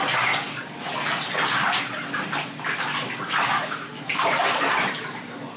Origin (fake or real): real